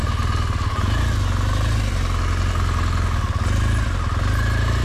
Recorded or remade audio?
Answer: recorded